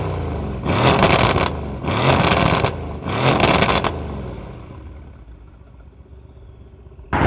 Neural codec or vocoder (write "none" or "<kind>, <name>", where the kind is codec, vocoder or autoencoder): none